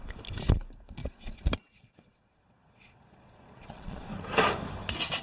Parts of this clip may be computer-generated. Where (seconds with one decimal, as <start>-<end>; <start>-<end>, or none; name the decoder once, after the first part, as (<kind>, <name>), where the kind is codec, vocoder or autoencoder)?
1.0-4.1 (vocoder, Vocos)